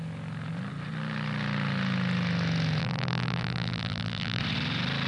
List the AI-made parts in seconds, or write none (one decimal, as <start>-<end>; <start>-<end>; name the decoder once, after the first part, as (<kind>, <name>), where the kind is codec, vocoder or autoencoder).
2.8-4.4 (vocoder, BigVGAN v2)